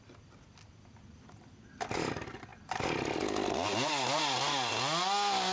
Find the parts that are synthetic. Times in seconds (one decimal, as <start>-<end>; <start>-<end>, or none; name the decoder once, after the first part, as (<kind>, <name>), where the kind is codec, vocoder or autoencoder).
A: none